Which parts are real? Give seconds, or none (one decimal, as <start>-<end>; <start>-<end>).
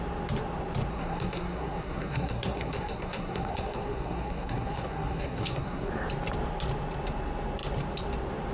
0.0-0.9; 5.9-8.5